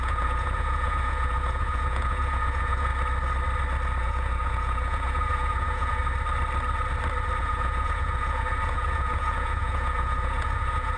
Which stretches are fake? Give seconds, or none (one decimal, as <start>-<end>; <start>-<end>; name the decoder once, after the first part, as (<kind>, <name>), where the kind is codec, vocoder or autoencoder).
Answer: 0.0-2.9 (vocoder, Vocos); 4.0-6.0; 7.4-11.0